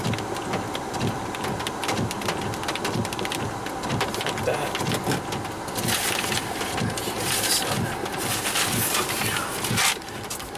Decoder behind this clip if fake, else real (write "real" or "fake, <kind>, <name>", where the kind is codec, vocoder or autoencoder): real